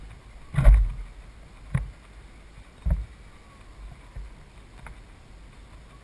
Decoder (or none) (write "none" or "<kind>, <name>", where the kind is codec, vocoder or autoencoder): none